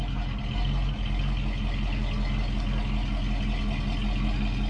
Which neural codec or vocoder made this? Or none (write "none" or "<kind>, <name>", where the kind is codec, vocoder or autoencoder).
none